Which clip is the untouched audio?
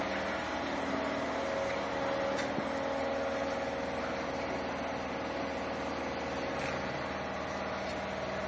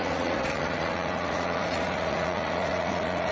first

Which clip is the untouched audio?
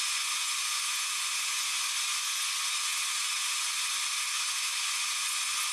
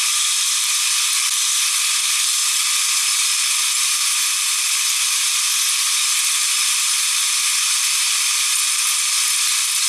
second